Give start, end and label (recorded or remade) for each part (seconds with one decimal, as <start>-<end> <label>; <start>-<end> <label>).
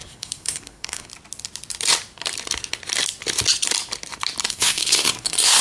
0.0-1.1 remade; 1.1-4.5 recorded; 4.5-5.6 remade